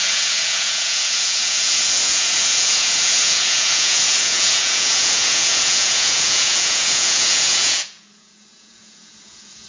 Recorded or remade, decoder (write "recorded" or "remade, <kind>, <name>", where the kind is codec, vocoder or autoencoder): remade, vocoder, Vocos